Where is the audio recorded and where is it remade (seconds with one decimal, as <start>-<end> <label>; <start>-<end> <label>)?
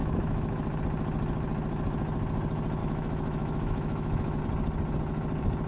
0.0-0.8 remade; 0.8-2.8 recorded; 2.8-4.4 remade; 4.4-5.7 recorded